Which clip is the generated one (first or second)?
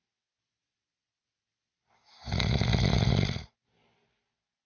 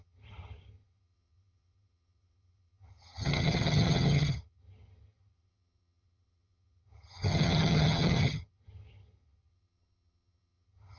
second